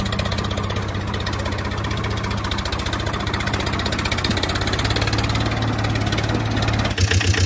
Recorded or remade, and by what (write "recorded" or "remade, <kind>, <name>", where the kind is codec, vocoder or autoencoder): recorded